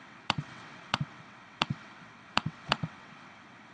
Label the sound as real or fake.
fake